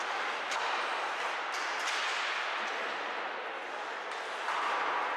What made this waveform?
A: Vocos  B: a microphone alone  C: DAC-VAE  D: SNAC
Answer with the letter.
B